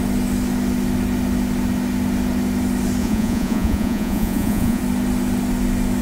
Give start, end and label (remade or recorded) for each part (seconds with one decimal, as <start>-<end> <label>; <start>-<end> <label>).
0.0-3.0 recorded; 3.0-4.8 remade; 4.8-6.0 recorded